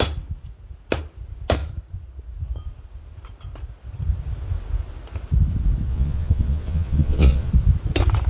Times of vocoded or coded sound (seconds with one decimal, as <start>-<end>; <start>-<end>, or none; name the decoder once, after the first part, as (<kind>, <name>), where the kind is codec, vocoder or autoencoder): 5.9-7.5 (vocoder, Vocos)